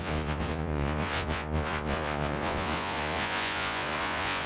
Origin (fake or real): fake